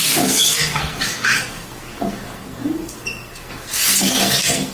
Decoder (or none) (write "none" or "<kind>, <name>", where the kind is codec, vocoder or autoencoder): codec, SNAC